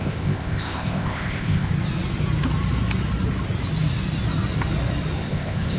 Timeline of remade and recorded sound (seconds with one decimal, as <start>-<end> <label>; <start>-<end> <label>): 0.0-1.7 remade; 1.7-5.2 recorded; 5.2-5.8 remade